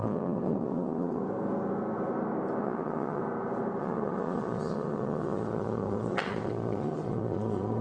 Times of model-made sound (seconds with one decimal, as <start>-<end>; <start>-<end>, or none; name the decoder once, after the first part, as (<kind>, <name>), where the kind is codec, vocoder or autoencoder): 0.0-1.2 (vocoder, Vocos); 2.6-3.2; 3.8-7.8